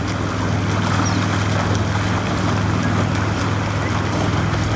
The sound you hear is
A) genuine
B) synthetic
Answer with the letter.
A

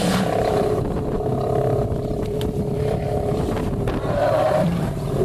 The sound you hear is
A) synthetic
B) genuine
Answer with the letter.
A